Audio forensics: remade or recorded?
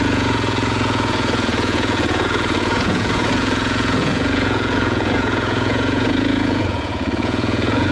remade